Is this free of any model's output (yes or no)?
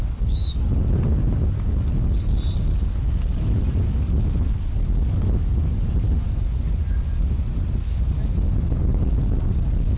yes